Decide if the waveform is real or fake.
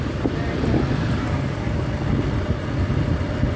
real